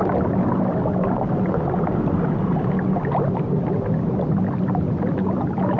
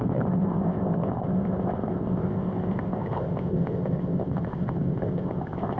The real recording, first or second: first